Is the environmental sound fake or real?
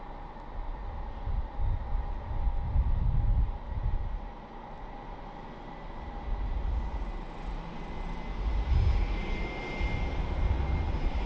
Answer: real